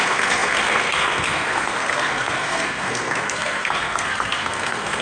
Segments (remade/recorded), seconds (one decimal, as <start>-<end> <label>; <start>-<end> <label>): 0.0-5.0 remade